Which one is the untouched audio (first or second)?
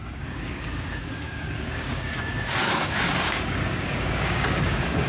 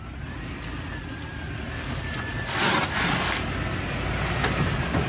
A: second